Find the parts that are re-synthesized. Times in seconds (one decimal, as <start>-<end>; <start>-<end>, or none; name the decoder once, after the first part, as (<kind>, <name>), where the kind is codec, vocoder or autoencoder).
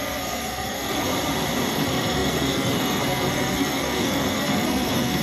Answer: 0.0-1.1 (codec, SNAC); 1.7-5.2